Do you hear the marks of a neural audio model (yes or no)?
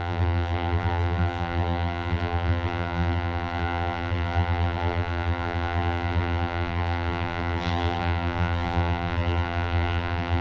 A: yes